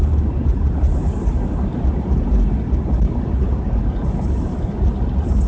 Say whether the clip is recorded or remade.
recorded